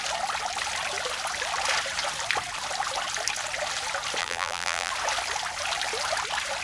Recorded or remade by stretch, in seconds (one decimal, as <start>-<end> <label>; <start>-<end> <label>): 0.0-4.2 recorded; 4.2-4.9 remade; 4.9-6.6 recorded